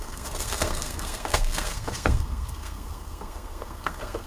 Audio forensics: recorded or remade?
remade